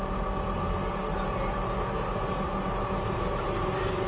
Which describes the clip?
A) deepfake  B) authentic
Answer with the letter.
B